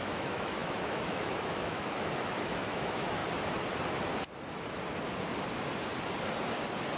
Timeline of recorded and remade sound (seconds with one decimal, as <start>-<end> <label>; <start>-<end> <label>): 0.0-3.2 remade; 3.2-7.0 recorded